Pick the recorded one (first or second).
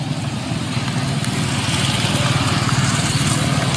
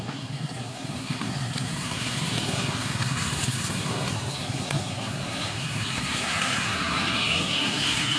first